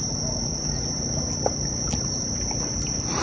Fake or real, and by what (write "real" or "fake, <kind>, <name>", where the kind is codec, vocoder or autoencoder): fake, vocoder, BigVGAN v2